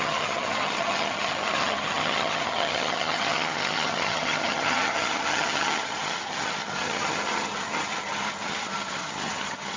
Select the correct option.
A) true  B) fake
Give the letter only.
B